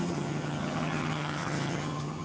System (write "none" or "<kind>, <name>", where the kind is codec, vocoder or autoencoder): vocoder, HiFi-GAN